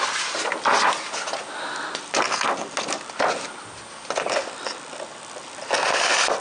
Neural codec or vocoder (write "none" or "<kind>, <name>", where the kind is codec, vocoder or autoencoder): none